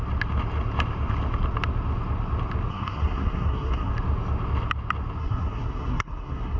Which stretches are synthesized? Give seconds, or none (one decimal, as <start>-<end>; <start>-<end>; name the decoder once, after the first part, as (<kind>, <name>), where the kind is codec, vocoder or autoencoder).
2.7-3.9 (codec, SNAC); 5.2-6.6